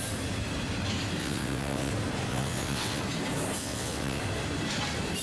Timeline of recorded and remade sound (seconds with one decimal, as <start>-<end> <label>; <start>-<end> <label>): 0.0-1.2 recorded; 1.2-1.9 remade; 1.9-2.3 recorded; 2.3-3.0 remade; 3.0-3.6 recorded; 3.6-4.2 remade; 4.2-5.2 recorded